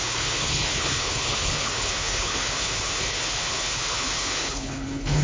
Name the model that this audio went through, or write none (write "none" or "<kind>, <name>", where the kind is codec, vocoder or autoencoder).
codec, HILCodec